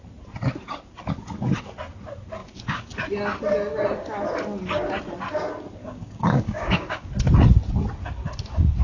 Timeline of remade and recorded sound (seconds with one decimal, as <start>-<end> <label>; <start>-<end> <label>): 0.0-2.4 recorded; 2.4-2.9 remade; 2.9-5.8 recorded; 5.8-7.1 remade; 7.1-8.8 recorded